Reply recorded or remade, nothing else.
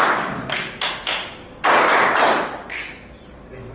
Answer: recorded